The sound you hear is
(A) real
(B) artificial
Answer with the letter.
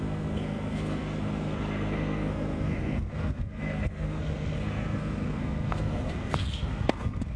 B